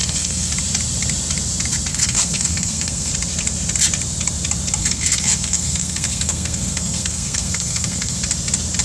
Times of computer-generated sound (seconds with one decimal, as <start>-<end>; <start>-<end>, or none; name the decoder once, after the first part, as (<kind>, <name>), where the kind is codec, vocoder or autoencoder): 0.0-0.5 (codec, SNAC); 1.9-3.1; 4.8-8.2